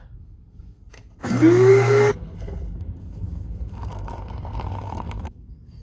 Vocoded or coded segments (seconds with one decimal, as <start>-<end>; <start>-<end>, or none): 0.0-5.8